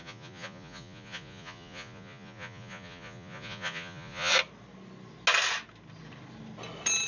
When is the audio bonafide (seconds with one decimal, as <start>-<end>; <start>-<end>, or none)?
4.3-7.1